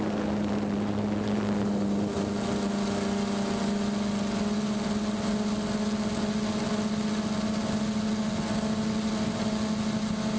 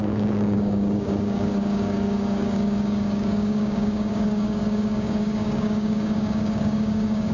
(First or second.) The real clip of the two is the first